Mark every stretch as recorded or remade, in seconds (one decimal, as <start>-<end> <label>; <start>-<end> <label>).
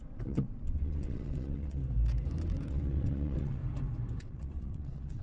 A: 0.0-1.8 remade; 1.8-2.7 recorded; 2.7-3.6 remade; 3.6-4.2 recorded; 4.2-5.2 remade